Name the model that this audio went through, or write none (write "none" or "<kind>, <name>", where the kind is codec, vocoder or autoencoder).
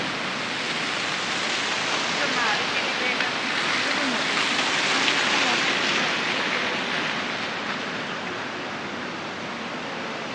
none